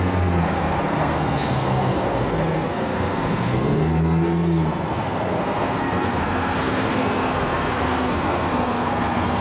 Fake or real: fake